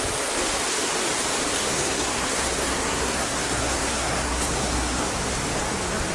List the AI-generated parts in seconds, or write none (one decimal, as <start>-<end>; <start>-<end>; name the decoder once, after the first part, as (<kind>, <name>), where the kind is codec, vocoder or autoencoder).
1.6-5.1 (codec, SNAC)